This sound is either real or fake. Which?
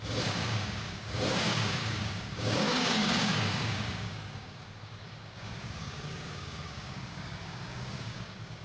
fake